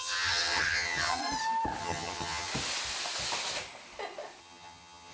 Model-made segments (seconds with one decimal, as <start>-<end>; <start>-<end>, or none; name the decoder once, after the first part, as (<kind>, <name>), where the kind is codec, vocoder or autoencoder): 0.0-1.2 (vocoder, HiFi-GAN); 1.8-2.5; 4.4-5.1